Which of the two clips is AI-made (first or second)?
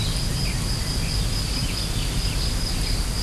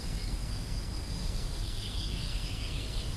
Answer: second